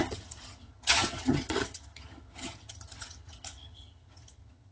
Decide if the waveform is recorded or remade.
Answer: remade